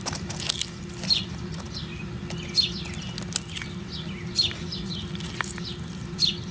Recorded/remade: recorded